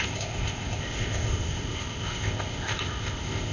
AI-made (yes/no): yes